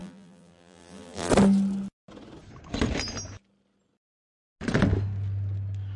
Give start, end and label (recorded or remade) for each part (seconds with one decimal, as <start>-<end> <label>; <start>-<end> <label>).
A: 0.0-1.3 remade; 1.3-6.0 recorded